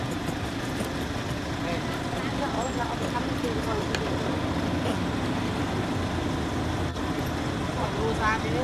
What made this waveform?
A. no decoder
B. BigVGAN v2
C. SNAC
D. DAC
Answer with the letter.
A